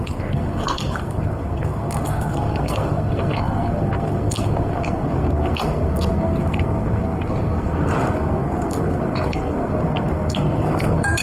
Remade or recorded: remade